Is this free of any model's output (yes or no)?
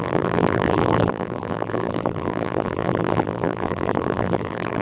no